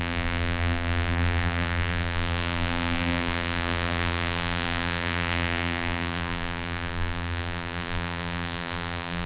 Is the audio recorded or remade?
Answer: remade